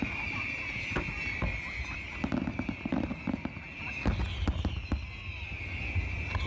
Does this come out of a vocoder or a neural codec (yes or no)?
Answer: no